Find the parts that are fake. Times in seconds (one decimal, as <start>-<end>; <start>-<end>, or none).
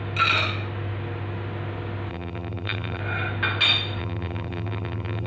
2.1-3.0; 4.0-5.3